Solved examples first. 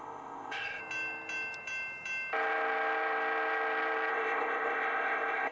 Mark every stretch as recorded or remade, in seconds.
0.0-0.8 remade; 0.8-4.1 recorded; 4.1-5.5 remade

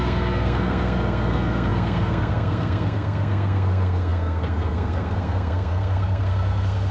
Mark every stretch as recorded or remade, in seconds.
0.0-6.9 remade

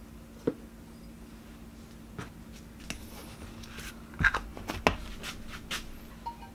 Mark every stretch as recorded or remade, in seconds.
0.0-6.5 recorded